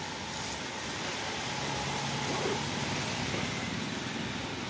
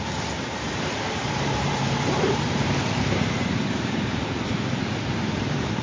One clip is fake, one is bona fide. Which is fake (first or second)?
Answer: second